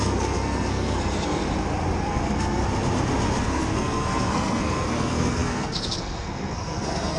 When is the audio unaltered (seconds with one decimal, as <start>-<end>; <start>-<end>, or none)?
1.4-2.0; 2.6-3.4